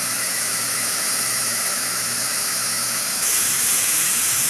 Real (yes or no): no